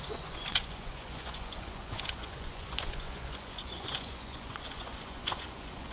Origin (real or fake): fake